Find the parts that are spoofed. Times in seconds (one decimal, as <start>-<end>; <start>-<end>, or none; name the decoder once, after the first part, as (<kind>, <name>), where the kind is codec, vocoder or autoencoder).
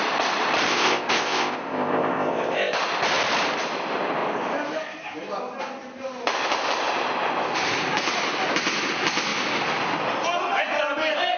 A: 0.7-2.8 (codec, ZipCodec)